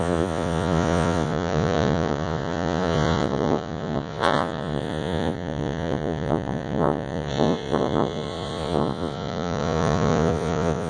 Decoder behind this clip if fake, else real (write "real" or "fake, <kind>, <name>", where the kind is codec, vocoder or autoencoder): fake, vocoder, Vocos